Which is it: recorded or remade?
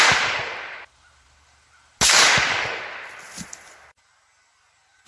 recorded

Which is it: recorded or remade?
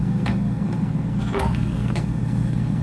remade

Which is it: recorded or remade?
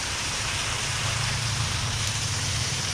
remade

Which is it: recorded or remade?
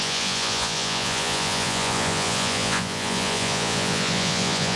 remade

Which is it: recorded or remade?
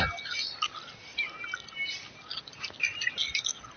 recorded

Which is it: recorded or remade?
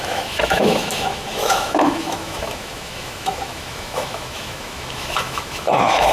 remade